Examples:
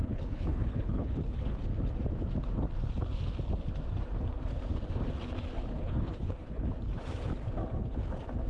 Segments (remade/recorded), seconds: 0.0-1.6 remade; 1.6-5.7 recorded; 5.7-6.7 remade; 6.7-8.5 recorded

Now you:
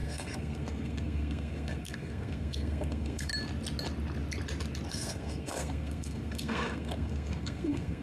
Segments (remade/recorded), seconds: 0.0-3.3 remade; 3.3-4.9 recorded; 4.9-8.0 remade

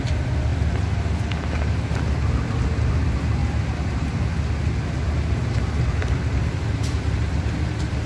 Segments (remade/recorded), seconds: 0.0-0.5 remade; 0.5-2.9 recorded; 2.9-3.4 remade; 3.4-6.0 recorded; 6.0-8.1 remade